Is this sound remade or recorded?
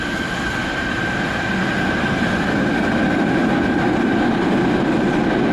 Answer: recorded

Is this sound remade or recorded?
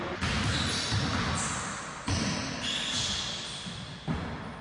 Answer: recorded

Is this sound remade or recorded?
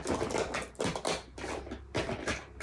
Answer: recorded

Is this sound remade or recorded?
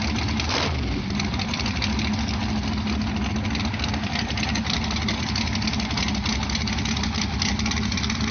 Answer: recorded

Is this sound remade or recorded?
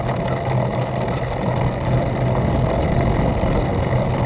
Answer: recorded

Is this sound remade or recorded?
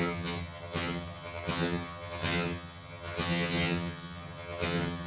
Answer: remade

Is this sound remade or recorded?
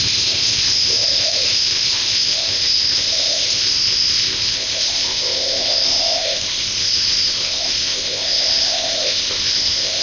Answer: remade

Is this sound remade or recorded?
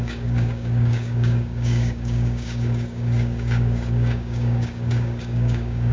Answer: remade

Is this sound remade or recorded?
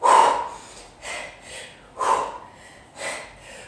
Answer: recorded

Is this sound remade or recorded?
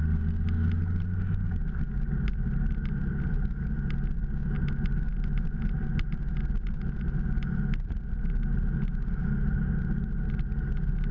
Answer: recorded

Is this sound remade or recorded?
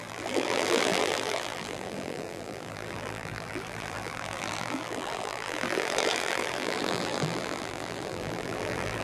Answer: remade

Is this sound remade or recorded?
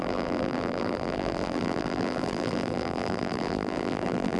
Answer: remade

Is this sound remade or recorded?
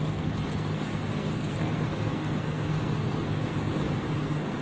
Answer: remade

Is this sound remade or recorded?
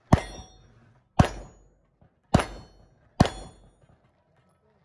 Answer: recorded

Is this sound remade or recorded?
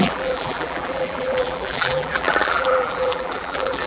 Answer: remade